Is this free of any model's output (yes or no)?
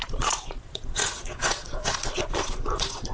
no